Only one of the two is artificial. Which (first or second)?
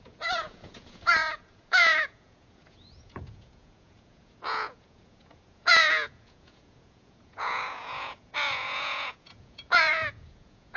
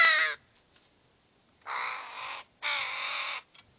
first